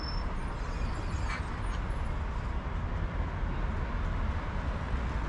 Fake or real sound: real